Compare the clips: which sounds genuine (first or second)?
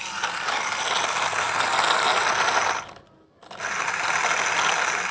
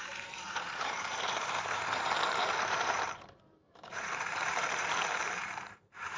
first